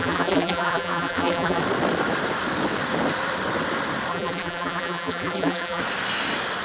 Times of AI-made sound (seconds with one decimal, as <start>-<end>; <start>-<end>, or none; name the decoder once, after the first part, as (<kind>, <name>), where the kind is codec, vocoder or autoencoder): 0.0-1.6 (vocoder, BigVGAN v2); 4.1-5.8